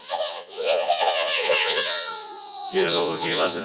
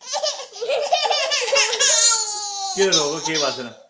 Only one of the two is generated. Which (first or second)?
first